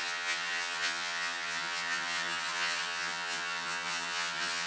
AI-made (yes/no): yes